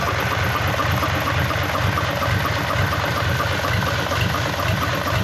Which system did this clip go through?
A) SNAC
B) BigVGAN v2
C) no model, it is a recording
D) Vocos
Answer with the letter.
C